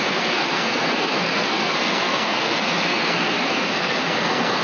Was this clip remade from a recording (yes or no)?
yes